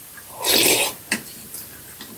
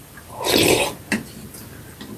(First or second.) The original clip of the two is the second